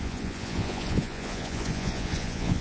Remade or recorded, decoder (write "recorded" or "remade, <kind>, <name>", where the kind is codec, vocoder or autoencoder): remade, vocoder, Vocos